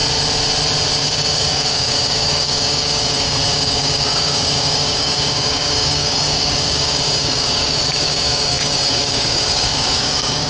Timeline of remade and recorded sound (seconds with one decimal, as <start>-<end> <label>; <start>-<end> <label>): 0.0-1.0 recorded; 1.0-10.5 remade